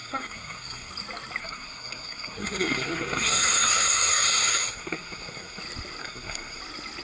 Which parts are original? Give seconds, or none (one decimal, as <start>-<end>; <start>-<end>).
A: 0.9-1.4; 5.6-6.0; 6.6-7.0